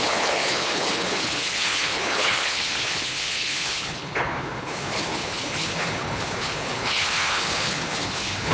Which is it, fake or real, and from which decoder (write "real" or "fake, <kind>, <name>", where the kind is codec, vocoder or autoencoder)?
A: fake, codec, HILCodec